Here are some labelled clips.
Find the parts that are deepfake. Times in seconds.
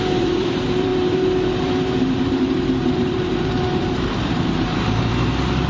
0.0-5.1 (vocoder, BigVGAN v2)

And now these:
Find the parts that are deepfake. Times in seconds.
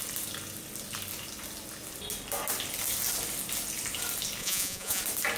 4.4-5.0 (vocoder, Vocos)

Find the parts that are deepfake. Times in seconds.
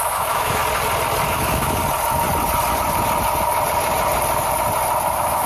0.0-0.6 (autoencoder, DAC-VAE); 1.3-1.8; 5.1-5.5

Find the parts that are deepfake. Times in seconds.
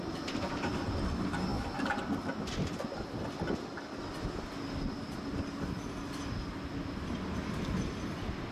none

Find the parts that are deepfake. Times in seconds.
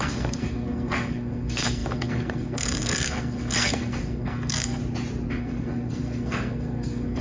0.0-4.8 (codec, SNAC); 5.3-7.2